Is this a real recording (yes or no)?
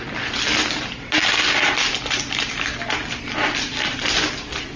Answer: yes